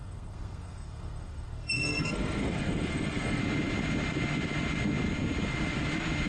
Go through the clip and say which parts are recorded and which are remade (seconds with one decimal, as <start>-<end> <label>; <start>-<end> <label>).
0.0-3.4 remade; 3.4-6.3 recorded